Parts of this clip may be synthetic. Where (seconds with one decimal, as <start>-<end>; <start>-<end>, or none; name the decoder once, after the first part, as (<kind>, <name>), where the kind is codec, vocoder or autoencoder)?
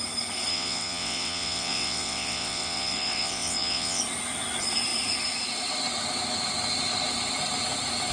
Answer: 0.5-4.0 (vocoder, WaveNeXt)